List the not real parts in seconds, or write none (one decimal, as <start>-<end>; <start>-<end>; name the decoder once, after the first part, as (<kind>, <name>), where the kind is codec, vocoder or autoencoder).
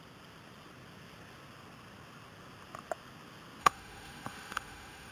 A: 3.6-5.1 (autoencoder, DAC-VAE)